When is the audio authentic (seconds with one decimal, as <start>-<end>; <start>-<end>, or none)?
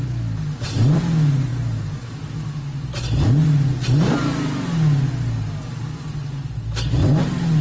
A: 0.0-7.6